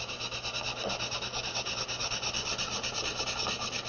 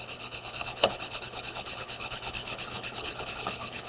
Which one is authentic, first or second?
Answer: first